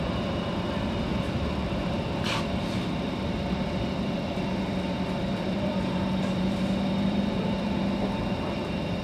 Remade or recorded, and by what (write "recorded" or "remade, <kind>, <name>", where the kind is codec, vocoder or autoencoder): remade, vocoder, BigVGAN v2